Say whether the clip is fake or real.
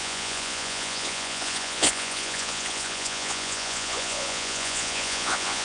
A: fake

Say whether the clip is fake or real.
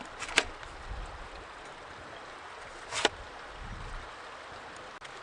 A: real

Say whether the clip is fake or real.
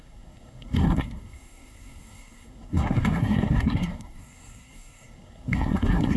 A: fake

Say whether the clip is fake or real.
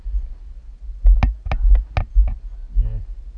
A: real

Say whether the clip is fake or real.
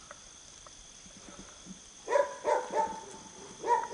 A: real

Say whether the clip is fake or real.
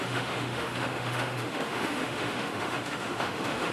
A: fake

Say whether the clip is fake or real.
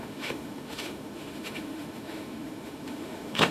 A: fake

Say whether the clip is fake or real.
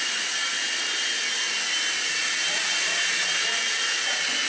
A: real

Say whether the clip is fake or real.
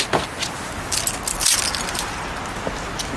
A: real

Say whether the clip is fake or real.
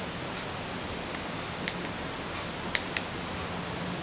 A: real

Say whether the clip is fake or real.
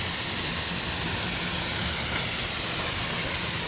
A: real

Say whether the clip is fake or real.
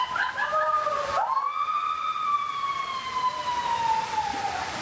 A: real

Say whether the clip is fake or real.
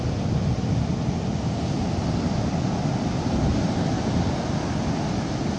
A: real